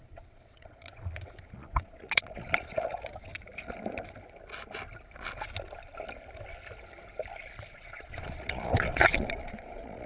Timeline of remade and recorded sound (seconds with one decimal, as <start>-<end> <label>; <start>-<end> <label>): 0.0-3.3 remade; 3.3-7.7 recorded; 7.7-10.1 remade